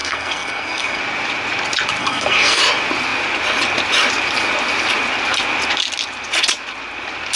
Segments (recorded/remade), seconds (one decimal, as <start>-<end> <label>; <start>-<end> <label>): 0.0-1.0 remade; 1.0-2.0 recorded; 2.0-2.6 remade; 2.6-7.4 recorded